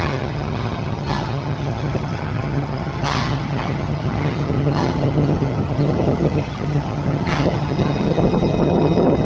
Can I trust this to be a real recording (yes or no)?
no